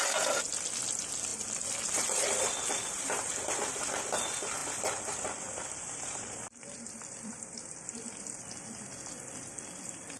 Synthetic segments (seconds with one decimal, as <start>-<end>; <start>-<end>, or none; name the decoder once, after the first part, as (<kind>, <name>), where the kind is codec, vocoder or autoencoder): 4.6-8.3 (vocoder, BigVGAN v2)